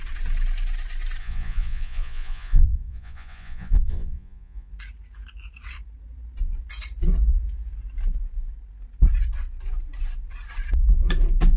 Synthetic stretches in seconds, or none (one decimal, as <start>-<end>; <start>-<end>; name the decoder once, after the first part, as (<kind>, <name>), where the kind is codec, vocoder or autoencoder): 1.2-4.7 (vocoder, Vocos)